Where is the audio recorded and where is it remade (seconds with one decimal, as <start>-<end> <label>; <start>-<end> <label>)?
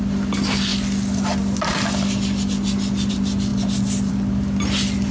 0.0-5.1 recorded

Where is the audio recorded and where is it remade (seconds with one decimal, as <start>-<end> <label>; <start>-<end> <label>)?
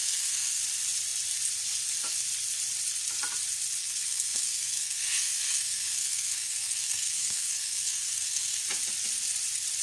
0.0-0.6 remade; 0.6-3.8 recorded; 3.8-8.6 remade; 8.6-9.8 recorded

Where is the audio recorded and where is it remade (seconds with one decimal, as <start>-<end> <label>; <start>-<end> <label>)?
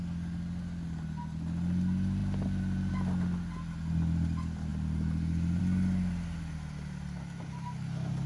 0.0-8.3 recorded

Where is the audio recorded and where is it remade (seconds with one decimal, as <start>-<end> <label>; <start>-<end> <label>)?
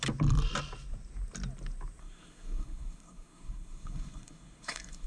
0.0-2.0 recorded; 2.0-5.1 remade